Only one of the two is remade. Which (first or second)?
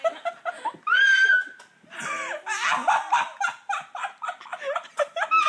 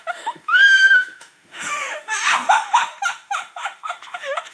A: second